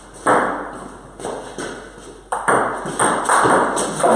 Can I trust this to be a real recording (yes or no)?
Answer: yes